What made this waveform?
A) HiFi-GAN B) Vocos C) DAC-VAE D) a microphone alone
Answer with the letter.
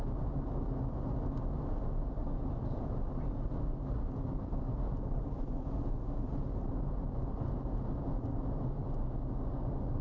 D